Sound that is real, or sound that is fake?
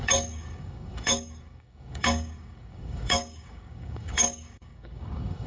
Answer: fake